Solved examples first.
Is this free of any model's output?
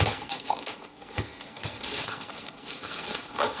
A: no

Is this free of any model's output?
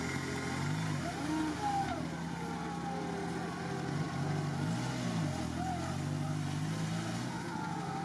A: yes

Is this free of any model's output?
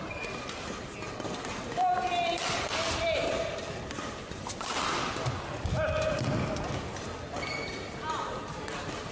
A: yes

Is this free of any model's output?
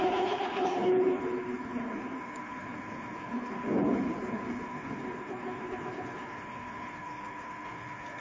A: no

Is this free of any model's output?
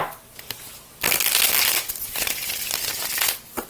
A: yes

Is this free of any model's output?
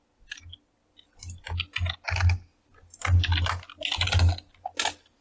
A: yes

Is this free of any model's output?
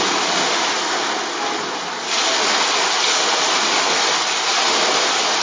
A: yes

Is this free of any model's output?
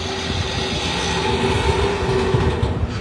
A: yes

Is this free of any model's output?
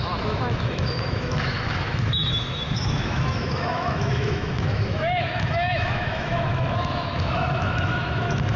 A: no